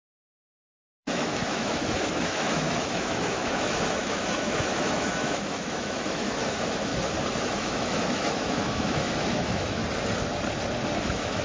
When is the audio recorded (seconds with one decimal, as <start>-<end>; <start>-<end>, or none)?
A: 6.9-7.4; 9.8-11.0